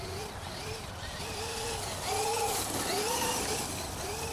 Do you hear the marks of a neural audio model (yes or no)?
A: no